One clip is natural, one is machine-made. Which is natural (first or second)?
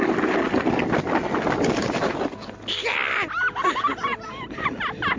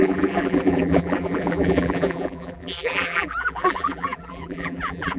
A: first